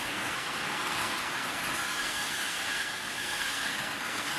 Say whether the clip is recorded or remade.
remade